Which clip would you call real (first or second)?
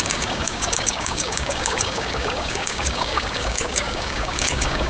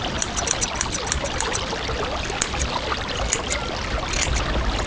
second